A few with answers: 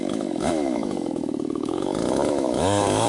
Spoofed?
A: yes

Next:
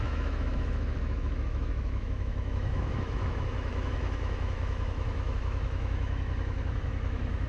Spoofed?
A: yes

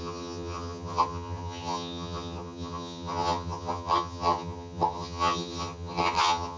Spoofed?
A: yes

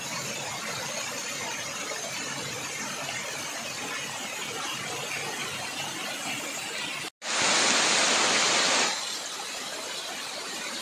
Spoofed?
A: no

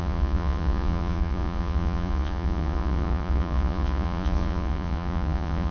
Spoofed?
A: yes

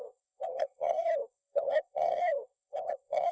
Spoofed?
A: yes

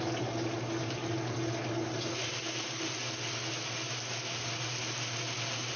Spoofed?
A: no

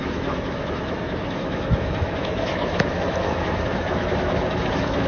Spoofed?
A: yes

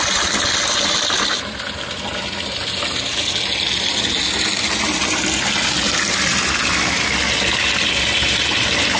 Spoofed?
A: no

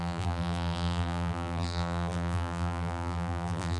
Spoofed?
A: yes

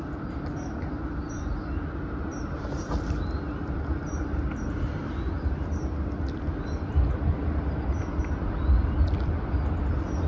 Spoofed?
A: no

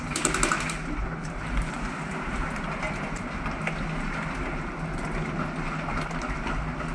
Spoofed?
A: no